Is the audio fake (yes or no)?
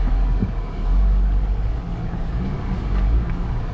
yes